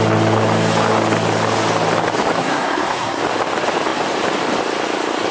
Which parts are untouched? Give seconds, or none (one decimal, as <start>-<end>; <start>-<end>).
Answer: 0.0-2.4; 3.2-5.3